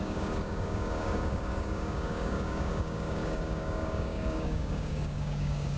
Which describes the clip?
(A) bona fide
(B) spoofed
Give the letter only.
B